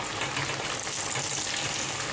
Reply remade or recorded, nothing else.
recorded